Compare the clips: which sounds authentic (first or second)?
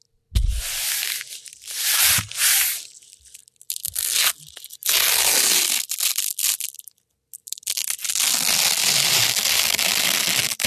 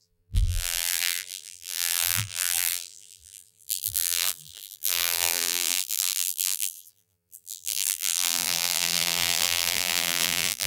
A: first